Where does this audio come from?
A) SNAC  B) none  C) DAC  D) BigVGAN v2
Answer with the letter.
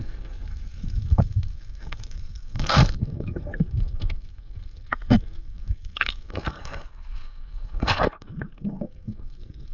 A